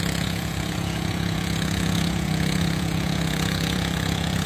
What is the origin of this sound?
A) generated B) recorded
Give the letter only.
A